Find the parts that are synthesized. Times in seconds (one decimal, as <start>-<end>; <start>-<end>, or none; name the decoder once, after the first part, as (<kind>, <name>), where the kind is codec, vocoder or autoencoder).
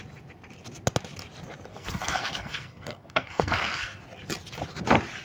1.7-4.0 (codec, SNAC)